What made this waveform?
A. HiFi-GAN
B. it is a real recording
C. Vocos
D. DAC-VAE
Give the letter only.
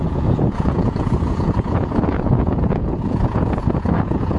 C